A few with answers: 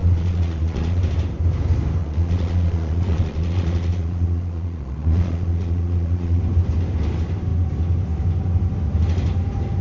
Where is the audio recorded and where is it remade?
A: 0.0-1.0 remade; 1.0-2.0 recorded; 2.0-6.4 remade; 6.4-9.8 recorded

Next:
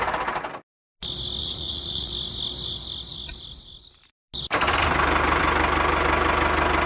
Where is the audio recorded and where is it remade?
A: 0.0-1.4 recorded; 1.4-2.1 remade; 2.1-6.9 recorded

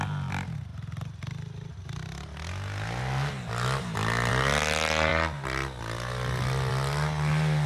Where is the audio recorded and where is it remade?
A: 0.0-7.7 recorded

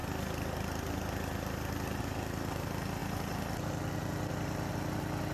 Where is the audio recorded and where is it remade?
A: 0.0-5.3 recorded